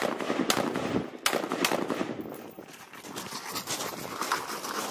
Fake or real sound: real